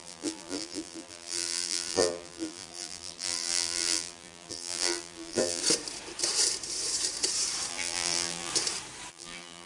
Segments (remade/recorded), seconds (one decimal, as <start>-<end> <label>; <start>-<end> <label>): 0.0-5.6 remade; 5.6-7.7 recorded; 7.7-8.5 remade; 8.5-9.1 recorded; 9.1-9.7 remade